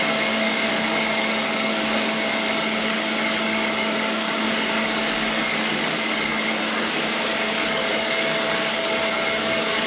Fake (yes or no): yes